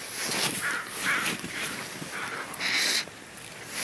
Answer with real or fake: real